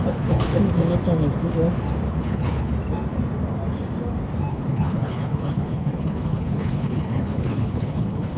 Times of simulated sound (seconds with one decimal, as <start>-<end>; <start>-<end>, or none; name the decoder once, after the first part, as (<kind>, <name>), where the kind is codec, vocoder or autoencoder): 0.0-0.5 (codec, HILCodec); 2.1-2.7; 4.5-8.4